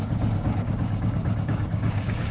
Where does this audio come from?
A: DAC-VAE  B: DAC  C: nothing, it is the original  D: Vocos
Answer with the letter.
B